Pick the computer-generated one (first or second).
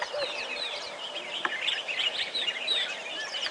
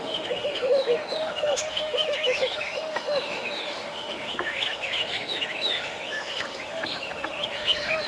second